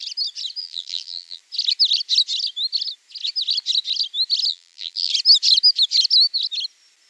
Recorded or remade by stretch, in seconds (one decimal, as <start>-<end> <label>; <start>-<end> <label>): 0.0-0.6 recorded; 0.6-1.4 remade; 1.4-4.5 recorded; 4.5-5.1 remade; 5.1-7.1 recorded